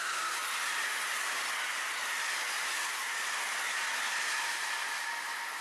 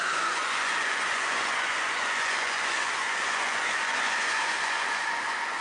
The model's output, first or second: second